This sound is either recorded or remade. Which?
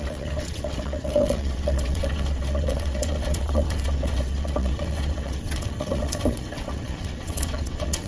remade